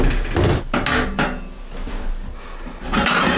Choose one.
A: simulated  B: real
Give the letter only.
B